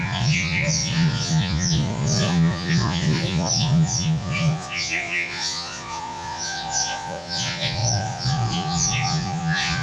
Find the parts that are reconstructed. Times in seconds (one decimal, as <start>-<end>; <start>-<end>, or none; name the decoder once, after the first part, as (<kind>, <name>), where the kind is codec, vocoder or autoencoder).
0.0-9.8 (vocoder, Vocos)